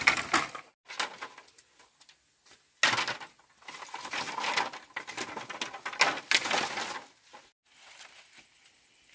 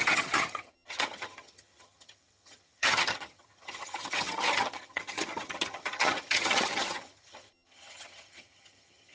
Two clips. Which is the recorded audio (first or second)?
first